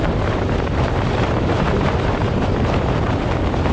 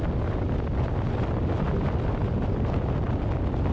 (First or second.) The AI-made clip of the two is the first